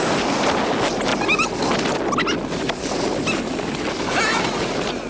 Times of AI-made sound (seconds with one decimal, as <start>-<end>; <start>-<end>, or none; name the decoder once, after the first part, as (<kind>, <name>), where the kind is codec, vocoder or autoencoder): none